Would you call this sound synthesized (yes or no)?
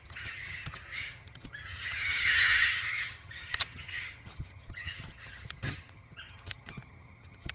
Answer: yes